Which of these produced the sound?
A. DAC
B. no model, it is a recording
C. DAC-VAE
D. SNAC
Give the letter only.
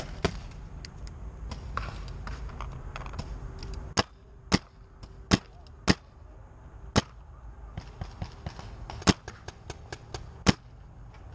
B